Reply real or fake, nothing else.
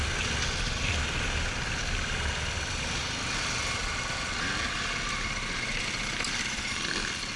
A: real